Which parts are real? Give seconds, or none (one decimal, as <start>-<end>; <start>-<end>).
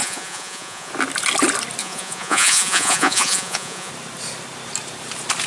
0.9-1.8; 3.9-5.5